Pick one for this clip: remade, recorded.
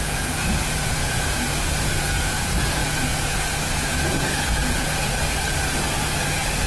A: remade